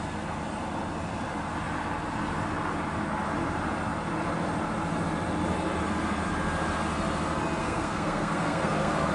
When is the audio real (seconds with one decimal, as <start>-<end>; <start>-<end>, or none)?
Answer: 0.0-7.6